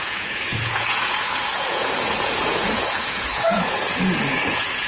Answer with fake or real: fake